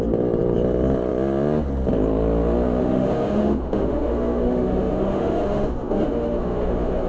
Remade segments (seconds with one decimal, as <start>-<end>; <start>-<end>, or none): 2.8-7.1

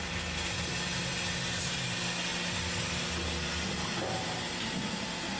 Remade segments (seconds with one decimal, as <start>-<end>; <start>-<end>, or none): none

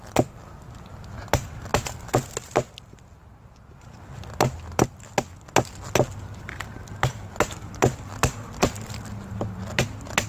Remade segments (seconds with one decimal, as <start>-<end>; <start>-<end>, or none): none

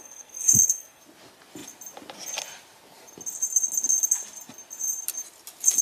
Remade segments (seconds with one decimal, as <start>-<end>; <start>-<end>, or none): 0.0-1.0

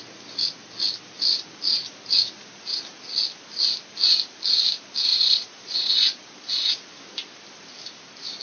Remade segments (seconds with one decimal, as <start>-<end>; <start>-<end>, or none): 5.1-6.7

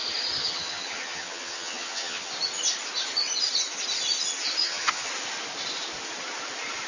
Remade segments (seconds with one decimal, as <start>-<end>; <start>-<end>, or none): 0.4-2.3; 4.6-5.1